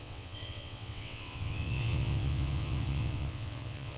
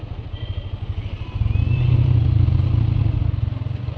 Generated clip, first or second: first